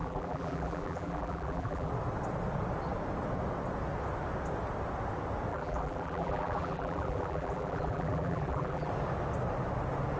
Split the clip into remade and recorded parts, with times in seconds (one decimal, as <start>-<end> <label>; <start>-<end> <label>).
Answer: 0.0-1.9 remade; 1.9-5.5 recorded; 5.5-8.9 remade; 8.9-10.2 recorded